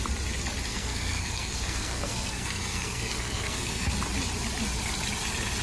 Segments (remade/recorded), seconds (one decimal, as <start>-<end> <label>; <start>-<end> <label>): 0.0-0.7 recorded; 0.7-3.9 remade; 3.9-5.6 recorded